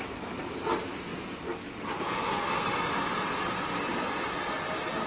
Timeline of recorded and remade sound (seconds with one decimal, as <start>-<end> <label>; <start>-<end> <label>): 0.0-5.1 recorded